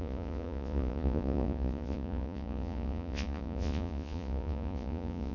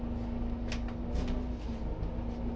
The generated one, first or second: first